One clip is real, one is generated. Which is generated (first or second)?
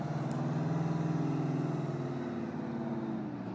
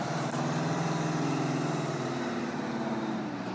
second